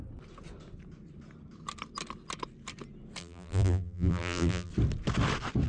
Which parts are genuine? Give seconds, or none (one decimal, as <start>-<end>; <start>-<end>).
0.0-3.2; 4.7-5.7